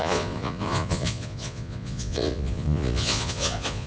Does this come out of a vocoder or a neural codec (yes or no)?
yes